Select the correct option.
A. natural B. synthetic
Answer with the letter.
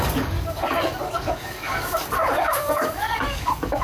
B